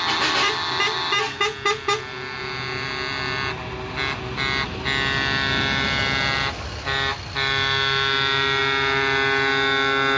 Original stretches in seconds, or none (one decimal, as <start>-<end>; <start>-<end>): 0.0-10.2